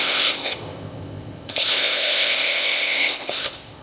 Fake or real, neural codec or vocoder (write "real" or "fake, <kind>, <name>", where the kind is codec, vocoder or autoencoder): fake, codec, ZipCodec